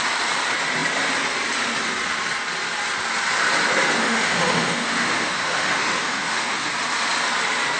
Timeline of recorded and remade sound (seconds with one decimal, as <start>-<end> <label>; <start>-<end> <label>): 0.0-4.0 recorded; 4.0-6.7 remade; 6.7-7.8 recorded